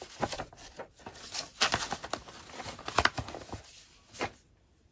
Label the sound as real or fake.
real